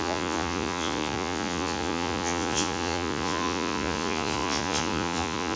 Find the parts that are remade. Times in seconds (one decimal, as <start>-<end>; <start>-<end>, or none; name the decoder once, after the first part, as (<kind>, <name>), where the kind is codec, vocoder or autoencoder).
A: 0.0-5.6 (vocoder, Vocos)